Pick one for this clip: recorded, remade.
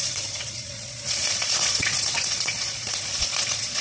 remade